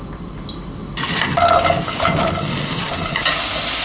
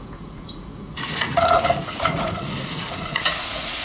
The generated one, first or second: second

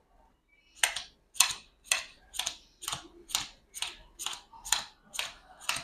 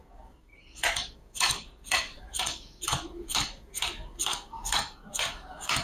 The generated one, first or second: second